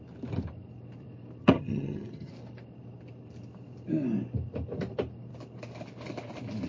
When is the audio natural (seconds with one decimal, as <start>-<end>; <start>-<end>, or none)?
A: 0.0-1.4; 2.3-6.7

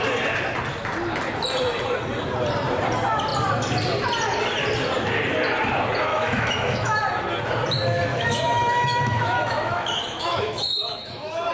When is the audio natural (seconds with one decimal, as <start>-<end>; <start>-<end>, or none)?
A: 0.0-6.1; 7.0-8.1

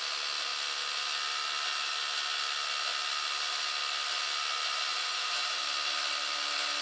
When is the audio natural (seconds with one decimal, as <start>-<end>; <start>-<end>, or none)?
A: 0.0-4.9; 5.6-6.8

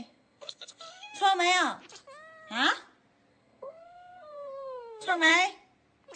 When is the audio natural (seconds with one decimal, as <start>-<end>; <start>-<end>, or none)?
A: 1.1-3.3; 5.3-6.2

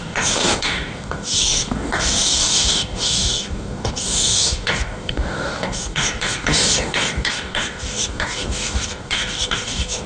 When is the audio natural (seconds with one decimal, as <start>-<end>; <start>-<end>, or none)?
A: none

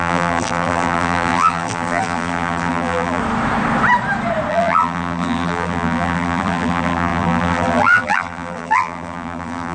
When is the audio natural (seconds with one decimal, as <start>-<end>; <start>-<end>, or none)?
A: 3.2-4.5

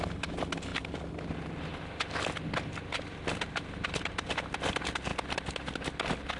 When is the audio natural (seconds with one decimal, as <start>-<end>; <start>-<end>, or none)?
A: 0.0-6.4

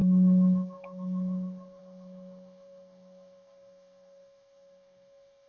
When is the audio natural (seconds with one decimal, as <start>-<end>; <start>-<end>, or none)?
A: none